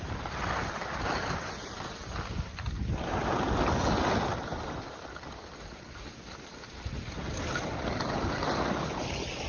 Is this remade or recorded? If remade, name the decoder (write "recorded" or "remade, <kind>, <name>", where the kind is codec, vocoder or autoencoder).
recorded